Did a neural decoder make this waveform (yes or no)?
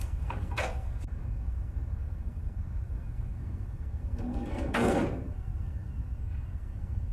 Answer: yes